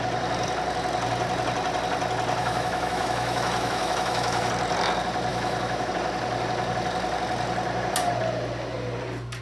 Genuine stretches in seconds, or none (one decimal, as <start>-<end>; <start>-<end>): 0.0-2.4; 4.5-5.3; 5.9-9.4